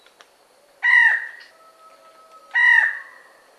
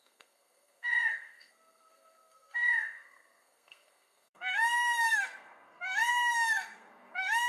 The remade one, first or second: second